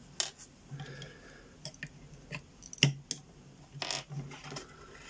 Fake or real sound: real